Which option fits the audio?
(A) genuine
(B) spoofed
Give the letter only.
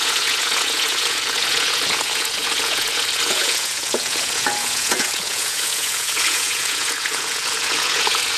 B